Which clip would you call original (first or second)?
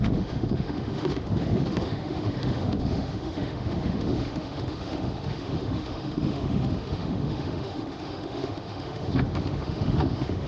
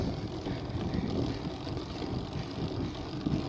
second